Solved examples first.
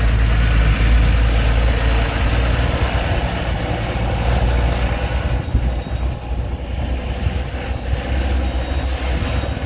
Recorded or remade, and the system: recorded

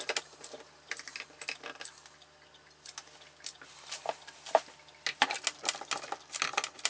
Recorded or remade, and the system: recorded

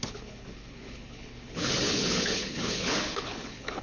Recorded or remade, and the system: remade, codec, HILCodec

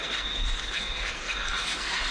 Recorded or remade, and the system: remade, codec, SNAC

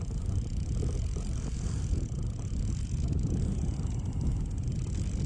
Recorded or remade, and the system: recorded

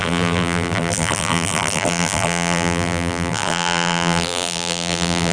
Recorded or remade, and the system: remade, vocoder, BigVGAN v2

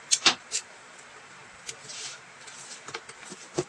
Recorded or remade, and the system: remade, vocoder, BigVGAN v2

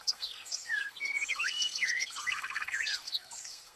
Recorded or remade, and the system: remade, codec, SNAC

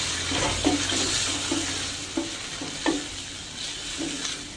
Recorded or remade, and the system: recorded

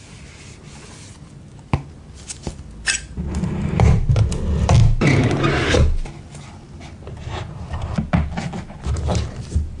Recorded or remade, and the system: recorded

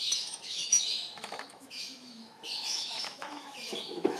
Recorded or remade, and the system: remade, autoencoder, DAC-VAE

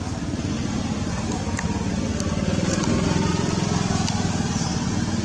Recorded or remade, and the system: recorded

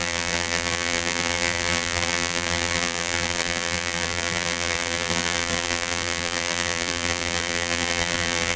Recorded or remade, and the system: remade, vocoder, BigVGAN v2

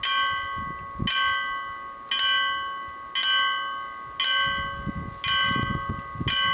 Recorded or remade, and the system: recorded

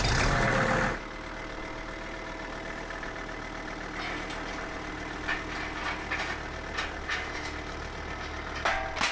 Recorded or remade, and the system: recorded